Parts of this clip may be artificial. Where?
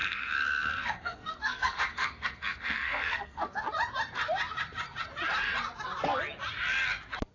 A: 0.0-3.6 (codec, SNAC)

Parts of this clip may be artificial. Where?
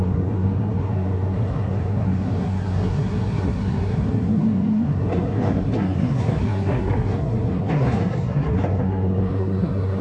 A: 0.0-10.0 (codec, SNAC)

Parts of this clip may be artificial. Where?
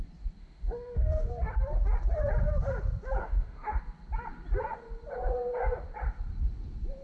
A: 0.4-1.3 (autoencoder, DAC-VAE); 3.2-3.8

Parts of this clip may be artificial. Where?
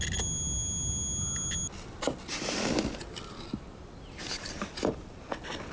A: none